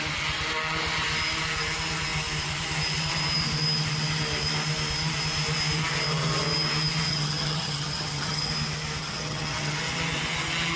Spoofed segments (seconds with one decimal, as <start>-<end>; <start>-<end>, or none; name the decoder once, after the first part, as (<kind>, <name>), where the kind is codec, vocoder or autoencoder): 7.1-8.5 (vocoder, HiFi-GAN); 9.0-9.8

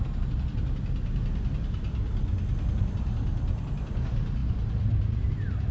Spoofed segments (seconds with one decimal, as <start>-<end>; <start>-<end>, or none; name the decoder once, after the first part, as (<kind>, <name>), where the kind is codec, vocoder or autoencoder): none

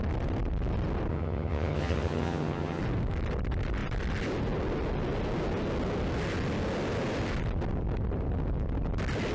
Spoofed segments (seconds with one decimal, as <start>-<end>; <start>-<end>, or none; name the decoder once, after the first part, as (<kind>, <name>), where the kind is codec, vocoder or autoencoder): 1.1-2.8 (vocoder, HiFi-GAN)